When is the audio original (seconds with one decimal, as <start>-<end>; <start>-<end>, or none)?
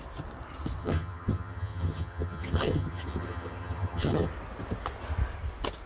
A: 0.0-0.8; 4.3-5.9